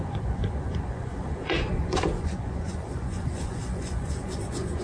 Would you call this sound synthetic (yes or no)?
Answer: yes